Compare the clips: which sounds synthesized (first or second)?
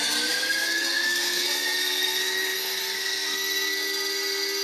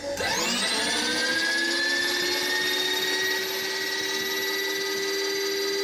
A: first